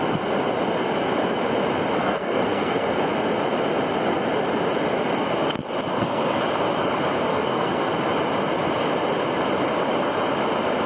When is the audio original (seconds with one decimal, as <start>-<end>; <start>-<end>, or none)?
0.0-2.0; 3.0-5.9; 6.4-7.3; 7.9-10.9